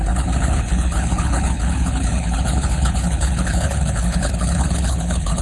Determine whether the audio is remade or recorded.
remade